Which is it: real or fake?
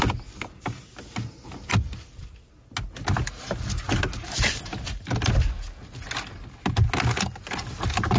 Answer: real